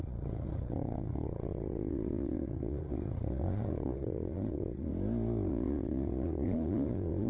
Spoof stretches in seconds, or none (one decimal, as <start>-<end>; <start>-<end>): 0.0-4.9; 5.5-7.3